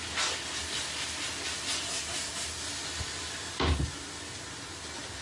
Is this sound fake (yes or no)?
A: no